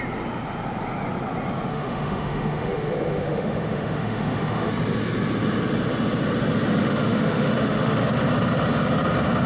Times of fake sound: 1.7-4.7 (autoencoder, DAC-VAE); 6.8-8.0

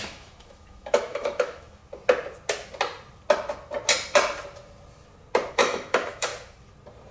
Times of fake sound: 0.0-1.8 (autoencoder, DAC-VAE); 5.5-6.3

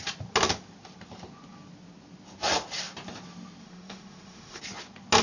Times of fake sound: 3.6-4.6 (autoencoder, DAC-VAE)